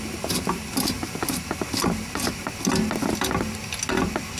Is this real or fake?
real